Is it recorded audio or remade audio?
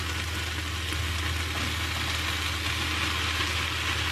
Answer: recorded